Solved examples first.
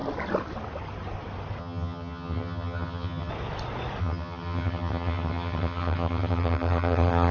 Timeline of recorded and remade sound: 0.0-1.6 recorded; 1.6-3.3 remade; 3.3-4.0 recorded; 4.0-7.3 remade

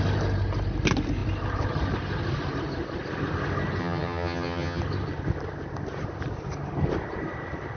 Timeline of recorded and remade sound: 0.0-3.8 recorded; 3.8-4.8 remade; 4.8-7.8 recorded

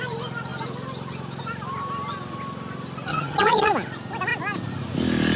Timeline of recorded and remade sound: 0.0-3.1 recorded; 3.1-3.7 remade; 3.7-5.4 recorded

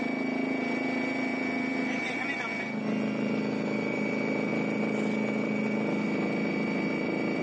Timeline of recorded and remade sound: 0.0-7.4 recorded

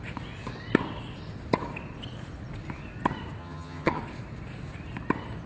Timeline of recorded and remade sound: 0.0-3.4 recorded; 3.4-4.0 remade; 4.0-5.5 recorded

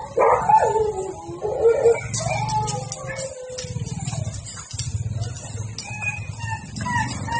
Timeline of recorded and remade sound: 0.0-7.4 recorded